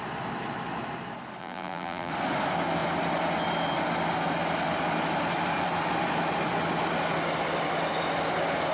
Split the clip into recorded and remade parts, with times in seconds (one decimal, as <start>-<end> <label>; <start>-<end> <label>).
0.0-1.4 recorded; 1.4-2.1 remade; 2.1-8.7 recorded

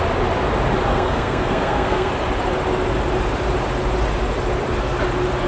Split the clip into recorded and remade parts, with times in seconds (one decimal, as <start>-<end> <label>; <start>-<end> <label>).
0.0-0.9 recorded; 0.9-2.1 remade; 2.1-5.5 recorded

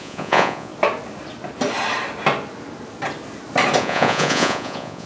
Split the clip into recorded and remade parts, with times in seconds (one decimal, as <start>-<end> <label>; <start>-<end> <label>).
0.0-0.7 remade; 0.7-3.8 recorded; 3.8-5.1 remade

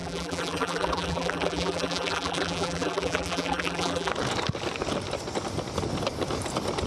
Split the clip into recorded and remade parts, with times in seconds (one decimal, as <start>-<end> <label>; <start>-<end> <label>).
0.0-4.1 remade; 4.1-6.9 recorded

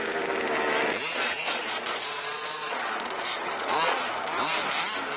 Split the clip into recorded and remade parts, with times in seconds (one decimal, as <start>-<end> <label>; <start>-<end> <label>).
0.0-1.0 recorded; 1.0-4.1 remade; 4.1-5.2 recorded

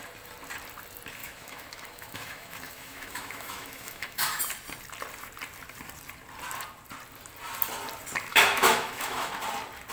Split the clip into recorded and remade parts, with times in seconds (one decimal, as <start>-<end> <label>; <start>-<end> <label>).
0.0-1.2 recorded; 1.2-4.4 remade; 4.4-8.3 recorded; 8.3-9.3 remade; 9.3-9.9 recorded